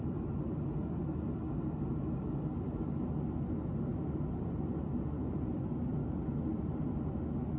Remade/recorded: recorded